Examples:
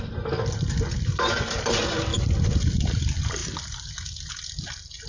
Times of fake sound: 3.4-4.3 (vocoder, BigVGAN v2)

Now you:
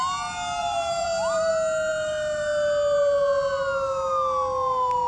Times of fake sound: 0.6-1.5 (vocoder, BigVGAN v2)

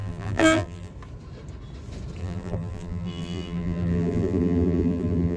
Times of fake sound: 0.0-0.9 (vocoder, BigVGAN v2); 2.2-5.4

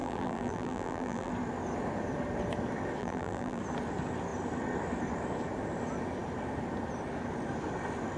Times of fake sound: 0.0-1.3 (vocoder, BigVGAN v2); 3.0-3.6